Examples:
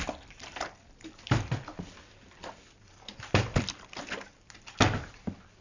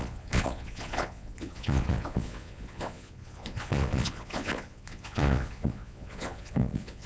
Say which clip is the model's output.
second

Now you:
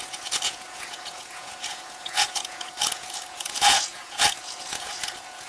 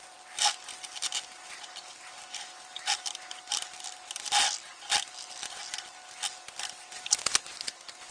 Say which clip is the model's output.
first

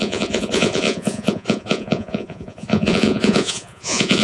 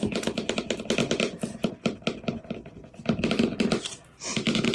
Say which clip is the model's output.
first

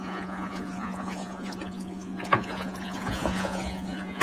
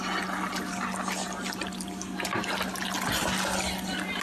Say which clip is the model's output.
first